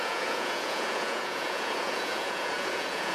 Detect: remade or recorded remade